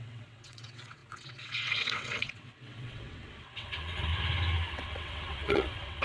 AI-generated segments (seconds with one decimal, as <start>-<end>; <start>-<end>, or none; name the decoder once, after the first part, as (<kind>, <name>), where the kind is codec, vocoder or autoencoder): 0.0-4.1 (vocoder, WaveNeXt); 4.7-6.0